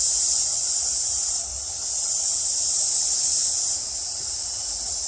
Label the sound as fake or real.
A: real